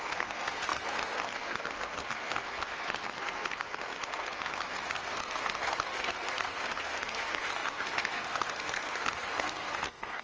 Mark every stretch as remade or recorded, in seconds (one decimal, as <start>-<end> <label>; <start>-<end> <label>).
0.0-10.2 remade